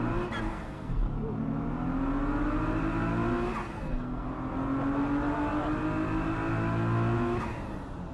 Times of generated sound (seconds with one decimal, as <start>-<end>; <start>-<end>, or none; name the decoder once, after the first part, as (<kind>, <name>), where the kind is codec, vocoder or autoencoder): 0.5-1.0 (codec, SNAC); 3.6-4.3